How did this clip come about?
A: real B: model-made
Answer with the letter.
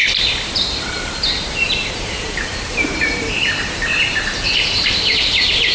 B